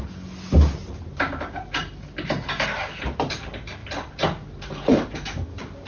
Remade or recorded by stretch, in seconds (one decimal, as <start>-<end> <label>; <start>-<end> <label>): 0.0-5.9 recorded